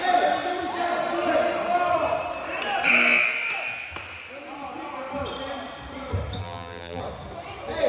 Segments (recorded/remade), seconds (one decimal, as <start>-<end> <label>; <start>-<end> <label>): 0.0-6.4 recorded; 6.4-7.0 remade; 7.0-7.9 recorded